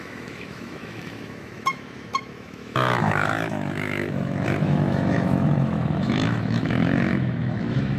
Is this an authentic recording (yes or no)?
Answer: no